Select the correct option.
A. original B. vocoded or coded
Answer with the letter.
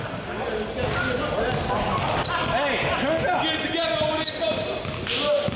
A